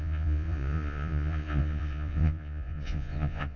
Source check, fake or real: fake